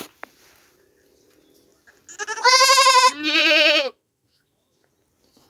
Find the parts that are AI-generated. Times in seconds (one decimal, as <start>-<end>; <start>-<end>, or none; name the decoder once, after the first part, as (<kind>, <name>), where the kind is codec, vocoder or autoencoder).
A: 3.4-4.9 (autoencoder, DAC-VAE)